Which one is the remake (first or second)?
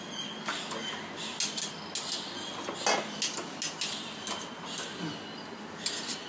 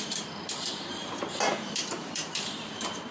second